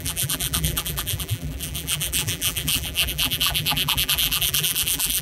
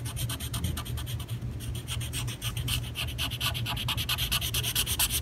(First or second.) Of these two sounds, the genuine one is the second